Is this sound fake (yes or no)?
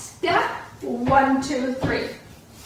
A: yes